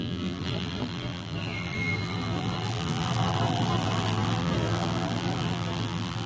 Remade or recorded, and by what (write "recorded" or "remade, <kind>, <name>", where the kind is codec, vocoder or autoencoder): remade, vocoder, BigVGAN v2